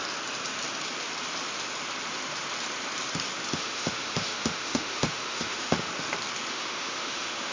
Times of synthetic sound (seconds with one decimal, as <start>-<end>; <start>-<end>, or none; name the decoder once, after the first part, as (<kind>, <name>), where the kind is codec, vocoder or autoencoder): 3.5-5.9 (autoencoder, DAC-VAE); 6.5-7.5